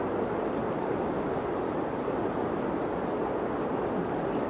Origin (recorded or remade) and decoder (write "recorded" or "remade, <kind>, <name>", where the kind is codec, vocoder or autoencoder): recorded